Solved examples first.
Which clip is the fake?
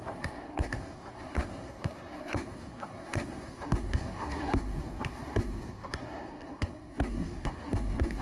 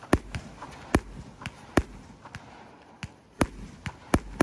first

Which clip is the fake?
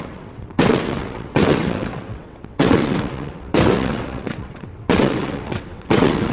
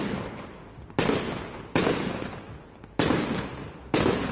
first